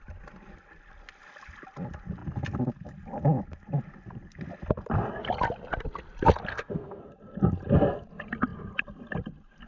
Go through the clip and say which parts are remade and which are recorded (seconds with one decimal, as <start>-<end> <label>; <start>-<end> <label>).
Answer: 0.0-6.5 recorded; 6.5-7.0 remade; 7.0-9.7 recorded